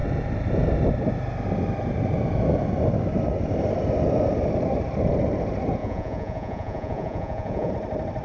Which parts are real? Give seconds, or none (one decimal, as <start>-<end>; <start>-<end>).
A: 0.0-5.8; 7.7-8.2